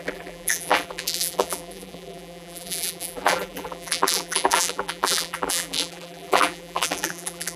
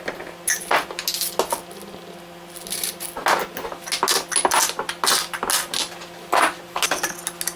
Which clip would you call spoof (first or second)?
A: first